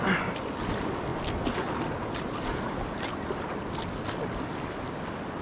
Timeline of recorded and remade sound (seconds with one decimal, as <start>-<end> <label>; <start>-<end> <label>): 0.0-5.4 recorded